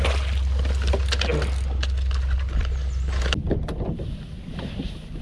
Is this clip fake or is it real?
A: real